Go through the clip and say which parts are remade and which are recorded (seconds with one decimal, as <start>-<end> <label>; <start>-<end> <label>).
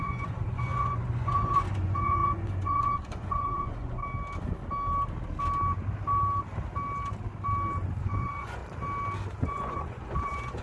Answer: 0.0-4.0 remade; 4.0-8.0 recorded; 8.0-8.6 remade; 8.6-9.4 recorded; 9.4-10.6 remade